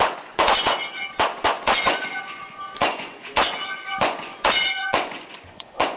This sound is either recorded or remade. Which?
remade